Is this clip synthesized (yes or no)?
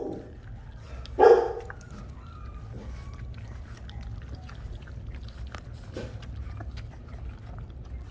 no